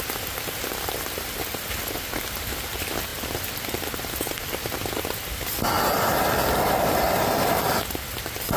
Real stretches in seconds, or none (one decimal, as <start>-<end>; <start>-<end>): 0.0-8.6